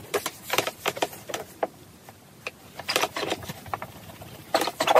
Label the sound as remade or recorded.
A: remade